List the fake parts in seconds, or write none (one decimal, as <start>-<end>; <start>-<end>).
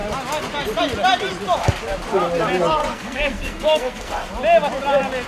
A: 2.8-4.3